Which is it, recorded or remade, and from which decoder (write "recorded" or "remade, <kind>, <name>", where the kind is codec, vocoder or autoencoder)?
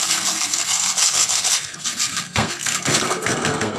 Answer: remade, codec, SNAC